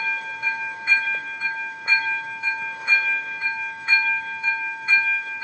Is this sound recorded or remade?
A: remade